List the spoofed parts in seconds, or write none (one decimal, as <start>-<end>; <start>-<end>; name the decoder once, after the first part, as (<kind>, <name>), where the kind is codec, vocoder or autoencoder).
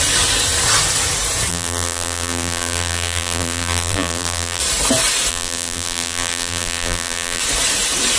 1.5-4.6 (vocoder, BigVGAN v2); 5.3-7.4